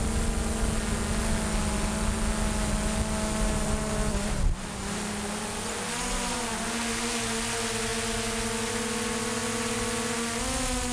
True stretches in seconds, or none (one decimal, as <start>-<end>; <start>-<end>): 0.0-10.9